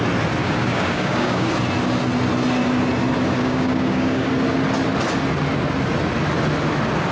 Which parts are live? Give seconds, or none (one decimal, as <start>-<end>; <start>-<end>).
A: 0.0-0.4; 1.5-3.4; 4.3-7.1